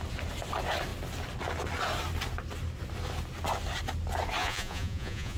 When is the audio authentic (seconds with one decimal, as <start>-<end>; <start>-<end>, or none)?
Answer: 0.0-4.4